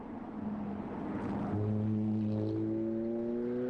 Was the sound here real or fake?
real